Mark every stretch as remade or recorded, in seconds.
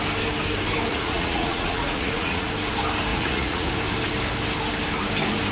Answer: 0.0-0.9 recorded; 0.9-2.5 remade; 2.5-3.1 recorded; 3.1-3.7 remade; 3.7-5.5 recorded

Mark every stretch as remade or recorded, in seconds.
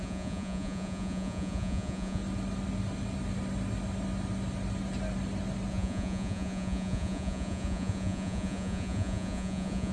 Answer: 0.0-2.2 remade; 2.2-5.7 recorded; 5.7-9.9 remade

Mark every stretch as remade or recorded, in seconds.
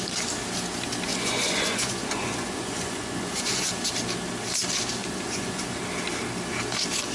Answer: 0.0-1.1 recorded; 1.1-3.7 remade; 3.7-5.0 recorded; 5.0-5.7 remade; 5.7-7.1 recorded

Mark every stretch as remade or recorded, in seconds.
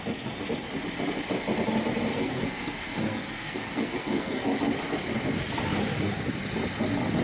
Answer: 0.0-2.1 recorded; 2.1-4.6 remade; 4.6-7.2 recorded